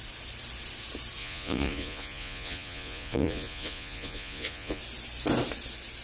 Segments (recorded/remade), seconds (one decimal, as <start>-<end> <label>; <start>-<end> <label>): 0.0-1.2 recorded; 1.2-4.8 remade; 4.8-6.0 recorded